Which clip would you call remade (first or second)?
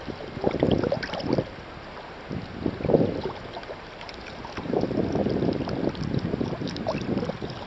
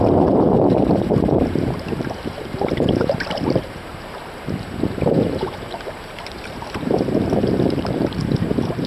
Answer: second